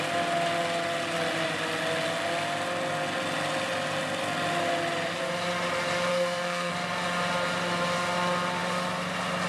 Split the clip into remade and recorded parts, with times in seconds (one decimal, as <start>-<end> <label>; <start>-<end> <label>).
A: 0.0-6.1 recorded; 6.1-6.7 remade; 6.7-9.5 recorded